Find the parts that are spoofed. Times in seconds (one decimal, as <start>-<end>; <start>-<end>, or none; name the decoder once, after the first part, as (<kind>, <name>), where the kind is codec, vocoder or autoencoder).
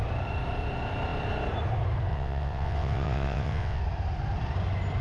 2.1-3.8 (vocoder, WaveNeXt)